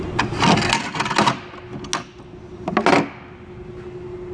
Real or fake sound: real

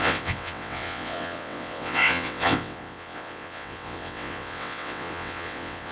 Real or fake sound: fake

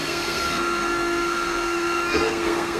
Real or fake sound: fake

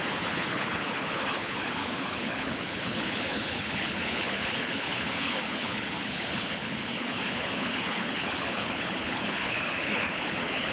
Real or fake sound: fake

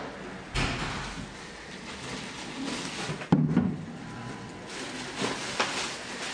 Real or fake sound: real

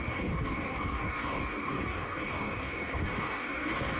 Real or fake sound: fake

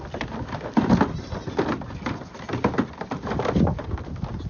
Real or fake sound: real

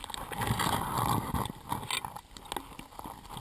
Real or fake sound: real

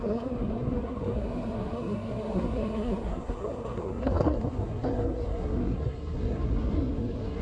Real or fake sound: fake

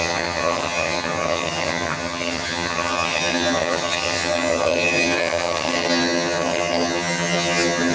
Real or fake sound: fake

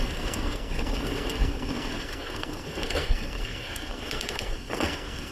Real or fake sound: fake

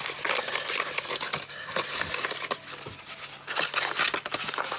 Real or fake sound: real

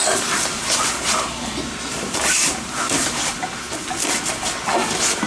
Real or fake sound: real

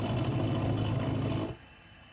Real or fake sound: real